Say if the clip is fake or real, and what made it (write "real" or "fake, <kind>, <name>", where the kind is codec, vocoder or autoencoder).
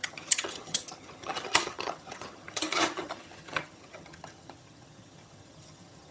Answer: fake, vocoder, HiFi-GAN